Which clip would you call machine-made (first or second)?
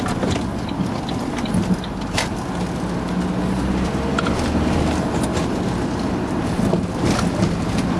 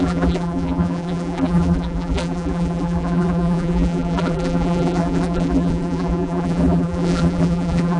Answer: second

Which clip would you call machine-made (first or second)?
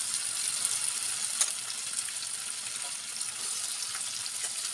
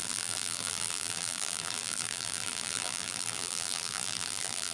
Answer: second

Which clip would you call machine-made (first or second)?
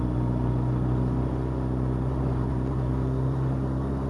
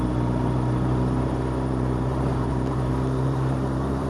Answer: second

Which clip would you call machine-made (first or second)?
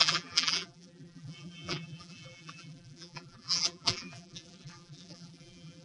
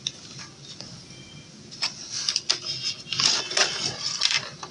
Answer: first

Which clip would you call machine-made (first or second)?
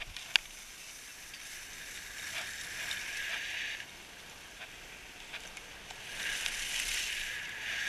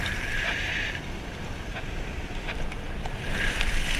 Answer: second